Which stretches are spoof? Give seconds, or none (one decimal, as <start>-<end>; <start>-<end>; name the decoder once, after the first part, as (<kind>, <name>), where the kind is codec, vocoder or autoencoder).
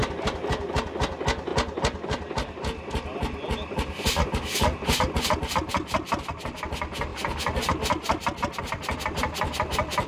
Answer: none